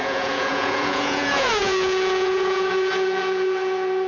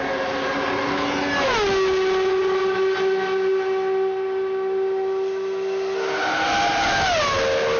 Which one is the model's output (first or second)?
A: first